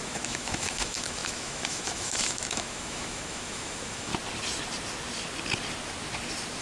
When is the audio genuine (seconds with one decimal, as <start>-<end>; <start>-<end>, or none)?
4.1-6.6